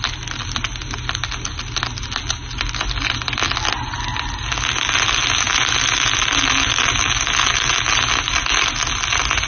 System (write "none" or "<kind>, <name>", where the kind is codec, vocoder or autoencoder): none